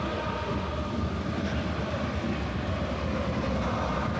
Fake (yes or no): no